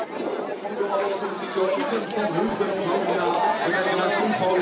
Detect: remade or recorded recorded